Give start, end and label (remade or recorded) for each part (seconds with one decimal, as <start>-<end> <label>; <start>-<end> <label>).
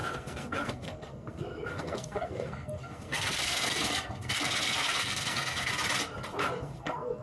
0.0-5.7 remade; 5.7-6.6 recorded; 6.6-7.2 remade